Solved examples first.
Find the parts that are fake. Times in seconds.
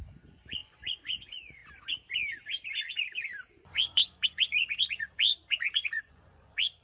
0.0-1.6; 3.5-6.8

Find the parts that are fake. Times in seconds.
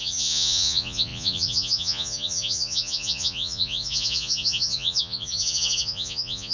0.0-6.5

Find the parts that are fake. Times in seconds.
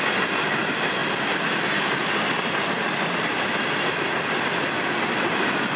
1.0-4.5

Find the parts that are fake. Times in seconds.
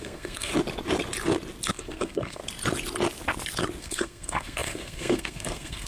0.0-0.5; 1.7-2.4; 3.8-5.9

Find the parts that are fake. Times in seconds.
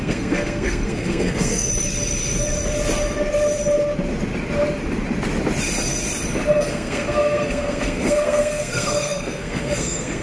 0.0-1.7; 6.5-10.2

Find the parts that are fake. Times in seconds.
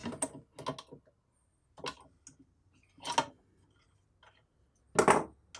none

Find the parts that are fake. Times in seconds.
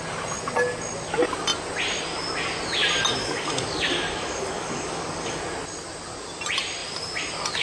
3.2-5.4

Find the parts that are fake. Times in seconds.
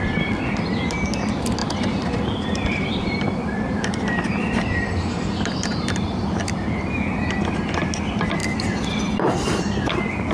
1.6-6.3